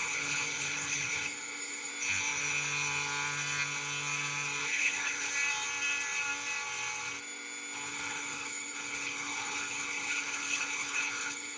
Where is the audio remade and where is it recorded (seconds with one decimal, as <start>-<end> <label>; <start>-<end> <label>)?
0.0-1.9 remade; 1.9-4.6 recorded; 4.6-5.3 remade; 5.3-7.9 recorded; 7.9-11.6 remade